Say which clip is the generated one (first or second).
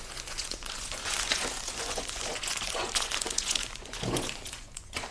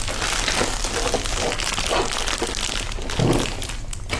first